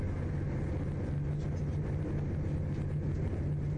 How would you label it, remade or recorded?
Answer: recorded